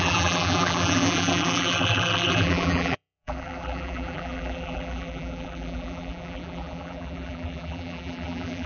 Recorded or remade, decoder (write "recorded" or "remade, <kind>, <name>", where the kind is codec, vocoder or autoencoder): remade, vocoder, BigVGAN v2